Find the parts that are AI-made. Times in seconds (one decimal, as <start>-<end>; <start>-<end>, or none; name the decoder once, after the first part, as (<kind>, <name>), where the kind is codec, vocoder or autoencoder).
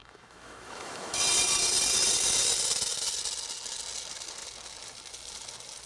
0.0-1.2 (autoencoder, DAC-VAE)